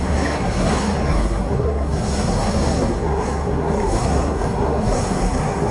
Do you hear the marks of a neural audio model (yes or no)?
yes